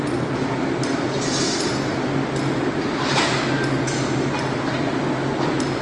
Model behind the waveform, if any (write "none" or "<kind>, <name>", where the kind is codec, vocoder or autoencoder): none